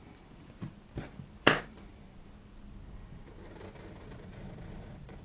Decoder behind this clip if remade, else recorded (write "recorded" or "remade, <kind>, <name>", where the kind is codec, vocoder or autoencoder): remade, vocoder, BigVGAN v2